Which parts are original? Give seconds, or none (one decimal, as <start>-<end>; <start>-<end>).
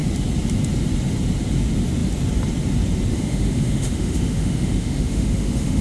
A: 0.0-3.1